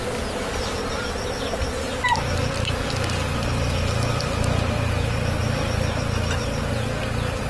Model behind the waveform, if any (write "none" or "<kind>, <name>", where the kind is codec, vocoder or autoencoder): none